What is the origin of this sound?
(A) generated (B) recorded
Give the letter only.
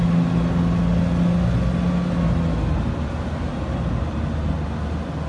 B